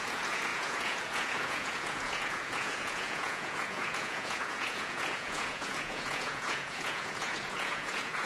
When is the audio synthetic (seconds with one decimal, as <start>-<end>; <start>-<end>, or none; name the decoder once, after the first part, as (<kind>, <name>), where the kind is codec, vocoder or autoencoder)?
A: 0.0-8.3 (vocoder, Vocos)